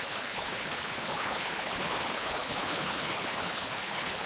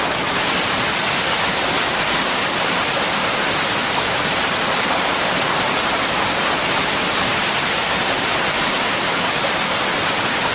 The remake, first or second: first